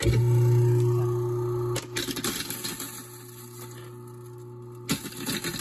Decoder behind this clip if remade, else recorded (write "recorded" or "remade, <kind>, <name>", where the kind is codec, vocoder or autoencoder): recorded